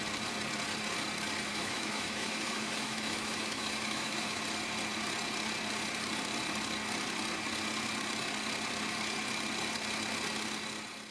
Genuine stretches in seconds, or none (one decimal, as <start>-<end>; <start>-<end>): 0.0-1.5; 4.4-11.1